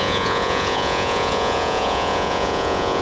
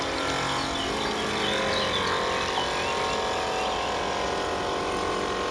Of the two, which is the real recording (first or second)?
second